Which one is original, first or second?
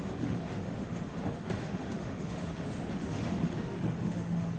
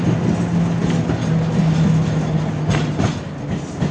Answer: second